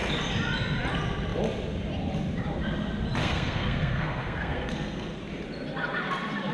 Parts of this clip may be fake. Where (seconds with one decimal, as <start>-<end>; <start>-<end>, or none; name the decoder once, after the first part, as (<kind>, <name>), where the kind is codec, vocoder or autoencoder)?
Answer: 3.2-5.2 (codec, SNAC)